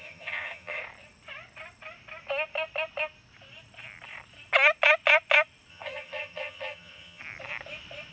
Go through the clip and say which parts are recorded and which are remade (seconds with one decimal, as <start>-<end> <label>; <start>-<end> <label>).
0.0-0.8 remade; 0.8-5.7 recorded; 5.7-7.2 remade; 7.2-8.1 recorded